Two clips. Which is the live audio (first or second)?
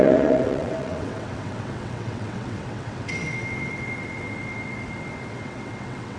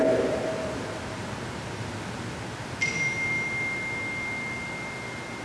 second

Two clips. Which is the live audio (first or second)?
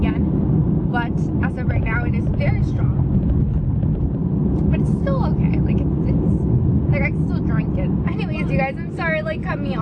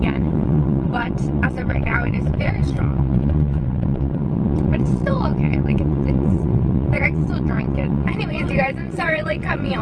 first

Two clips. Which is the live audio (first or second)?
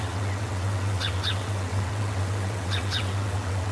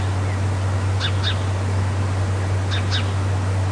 second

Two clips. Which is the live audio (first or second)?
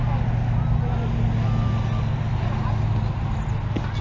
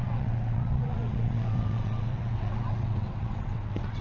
first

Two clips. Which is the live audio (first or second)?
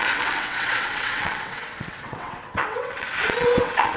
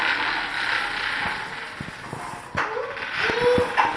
second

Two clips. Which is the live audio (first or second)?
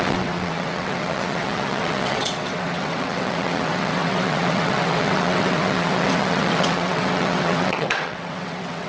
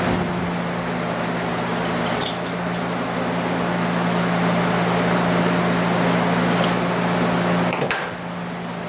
second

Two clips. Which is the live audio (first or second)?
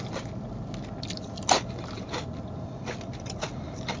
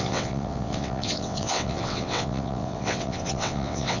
first